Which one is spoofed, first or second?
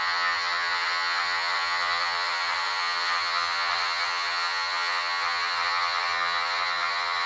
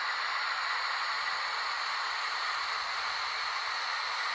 first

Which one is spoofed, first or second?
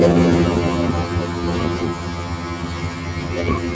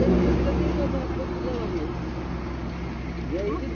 first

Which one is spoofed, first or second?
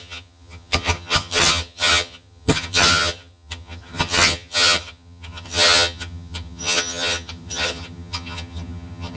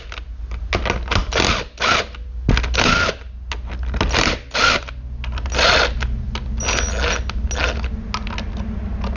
first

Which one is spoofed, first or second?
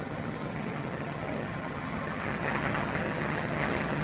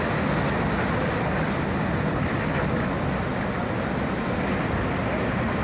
first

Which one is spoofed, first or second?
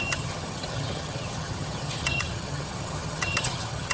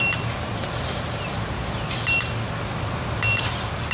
first